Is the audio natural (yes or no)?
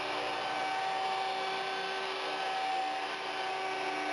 yes